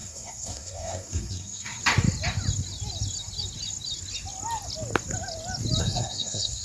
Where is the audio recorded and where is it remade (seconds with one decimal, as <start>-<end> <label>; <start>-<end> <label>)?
0.0-1.8 remade; 1.8-5.8 recorded; 5.8-6.6 remade